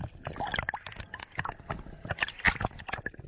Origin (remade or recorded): recorded